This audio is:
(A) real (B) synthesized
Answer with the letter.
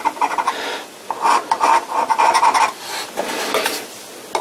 A